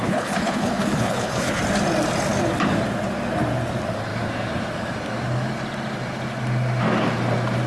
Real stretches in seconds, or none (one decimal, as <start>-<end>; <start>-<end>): 1.6-7.7